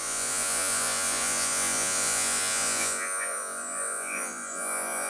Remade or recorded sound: remade